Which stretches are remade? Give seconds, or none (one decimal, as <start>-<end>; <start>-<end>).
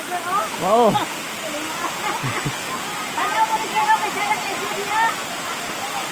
2.2-2.8